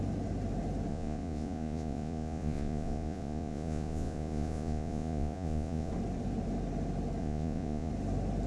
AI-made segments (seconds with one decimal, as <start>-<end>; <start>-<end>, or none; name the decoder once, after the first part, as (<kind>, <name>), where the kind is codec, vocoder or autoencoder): 0.9-5.9 (vocoder, Vocos); 7.2-7.9

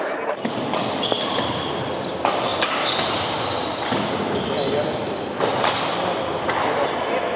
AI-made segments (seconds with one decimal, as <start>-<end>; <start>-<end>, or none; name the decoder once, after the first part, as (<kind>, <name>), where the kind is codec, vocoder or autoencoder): none

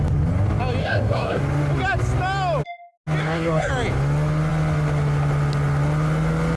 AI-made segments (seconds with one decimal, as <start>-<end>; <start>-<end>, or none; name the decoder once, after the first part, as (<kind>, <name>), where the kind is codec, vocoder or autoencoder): 0.8-1.4 (codec, SNAC); 3.2-3.7